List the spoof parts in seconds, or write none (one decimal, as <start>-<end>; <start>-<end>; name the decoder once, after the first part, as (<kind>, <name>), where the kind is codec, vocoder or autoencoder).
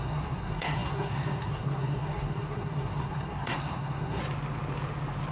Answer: 0.0-4.2 (codec, SNAC)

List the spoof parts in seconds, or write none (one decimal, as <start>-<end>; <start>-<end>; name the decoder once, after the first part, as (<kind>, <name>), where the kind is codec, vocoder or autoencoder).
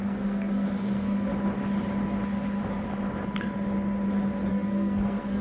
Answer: 0.0-1.3 (codec, SNAC); 4.5-5.4